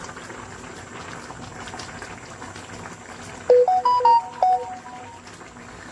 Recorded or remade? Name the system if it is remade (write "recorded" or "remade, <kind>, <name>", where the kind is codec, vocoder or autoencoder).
recorded